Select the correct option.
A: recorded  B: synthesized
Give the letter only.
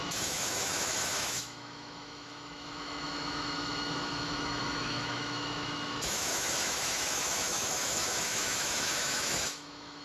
B